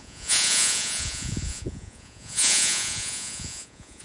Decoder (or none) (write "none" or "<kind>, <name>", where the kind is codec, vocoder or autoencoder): vocoder, Vocos